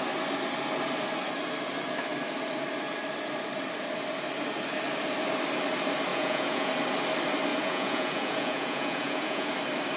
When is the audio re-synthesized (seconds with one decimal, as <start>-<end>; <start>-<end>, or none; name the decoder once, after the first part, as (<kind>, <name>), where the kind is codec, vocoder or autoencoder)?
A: 6.1-6.7 (vocoder, Vocos); 7.5-9.5